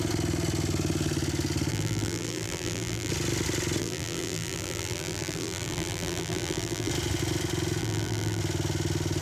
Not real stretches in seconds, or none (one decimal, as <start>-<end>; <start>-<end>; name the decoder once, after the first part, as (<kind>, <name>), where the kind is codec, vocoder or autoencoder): 1.7-3.1 (vocoder, BigVGAN v2); 3.8-6.9; 7.8-8.4